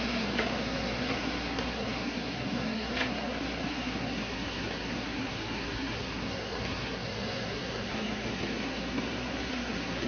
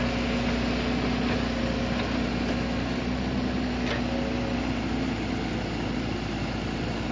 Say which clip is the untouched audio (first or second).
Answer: second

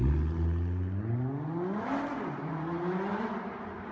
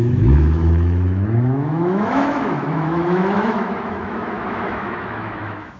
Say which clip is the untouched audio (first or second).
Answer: first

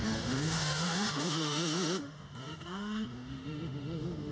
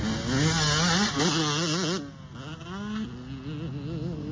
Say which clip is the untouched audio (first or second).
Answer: second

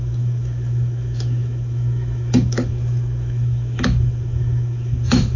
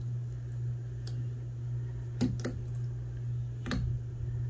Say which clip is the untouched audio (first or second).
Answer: second